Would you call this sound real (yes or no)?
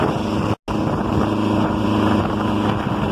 yes